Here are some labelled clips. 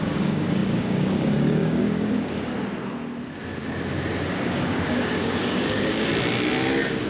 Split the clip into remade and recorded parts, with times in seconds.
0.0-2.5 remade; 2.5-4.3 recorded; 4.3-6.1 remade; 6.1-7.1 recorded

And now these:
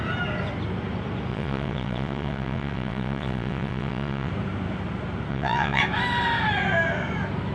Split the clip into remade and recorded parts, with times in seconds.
0.0-1.3 recorded; 1.3-4.3 remade; 4.3-5.3 recorded; 5.3-5.8 remade; 5.8-7.5 recorded

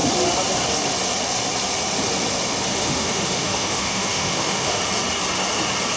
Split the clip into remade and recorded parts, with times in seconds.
0.0-2.7 recorded; 2.7-4.8 remade; 4.8-6.0 recorded

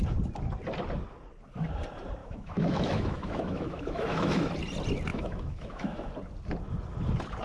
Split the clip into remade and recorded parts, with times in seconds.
0.0-2.2 recorded; 2.2-4.5 remade; 4.5-5.1 recorded; 5.1-6.1 remade; 6.1-7.4 recorded

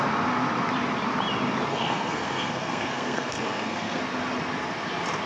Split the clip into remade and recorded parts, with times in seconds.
0.0-1.7 recorded; 1.7-4.0 remade; 4.0-5.3 recorded